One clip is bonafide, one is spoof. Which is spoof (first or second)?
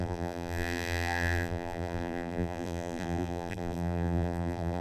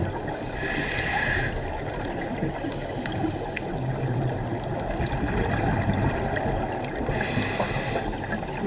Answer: first